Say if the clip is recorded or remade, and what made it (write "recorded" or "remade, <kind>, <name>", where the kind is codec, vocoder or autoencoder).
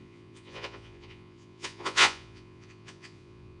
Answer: remade, vocoder, Vocos